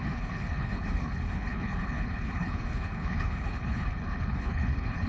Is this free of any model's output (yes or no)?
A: no